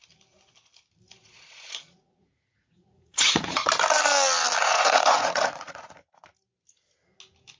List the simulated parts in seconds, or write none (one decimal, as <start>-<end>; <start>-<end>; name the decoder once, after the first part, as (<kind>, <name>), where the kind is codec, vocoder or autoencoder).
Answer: 1.2-3.7 (vocoder, Vocos); 4.6-6.2

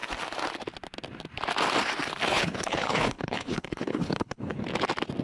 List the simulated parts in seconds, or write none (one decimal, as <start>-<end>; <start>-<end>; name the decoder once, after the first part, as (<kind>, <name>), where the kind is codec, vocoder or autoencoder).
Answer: 2.3-4.6 (codec, HILCodec)

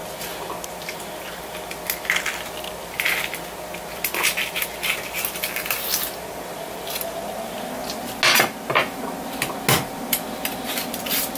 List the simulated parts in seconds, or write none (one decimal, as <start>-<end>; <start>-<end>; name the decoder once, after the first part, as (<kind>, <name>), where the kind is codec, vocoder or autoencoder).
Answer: none

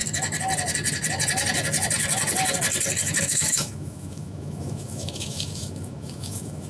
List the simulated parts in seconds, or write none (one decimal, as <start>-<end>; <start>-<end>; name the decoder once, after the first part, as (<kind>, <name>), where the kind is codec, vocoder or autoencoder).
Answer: 3.2-6.7 (autoencoder, DAC-VAE)